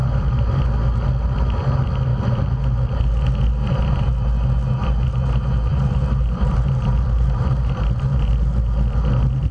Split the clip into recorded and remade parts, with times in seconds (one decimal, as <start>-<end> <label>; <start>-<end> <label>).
0.0-0.6 remade; 0.6-5.7 recorded; 5.7-8.3 remade; 8.3-9.5 recorded